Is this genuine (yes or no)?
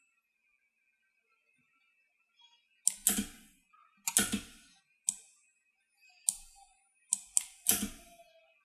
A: yes